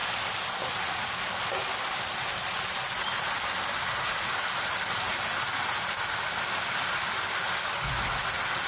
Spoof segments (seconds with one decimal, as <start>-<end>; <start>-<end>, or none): none